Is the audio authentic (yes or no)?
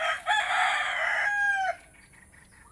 yes